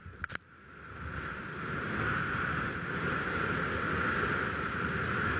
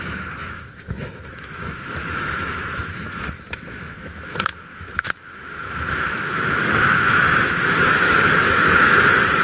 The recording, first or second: first